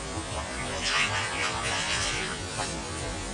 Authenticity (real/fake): real